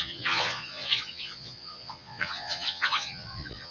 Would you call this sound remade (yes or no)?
yes